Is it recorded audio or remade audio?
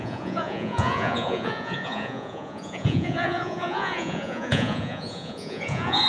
remade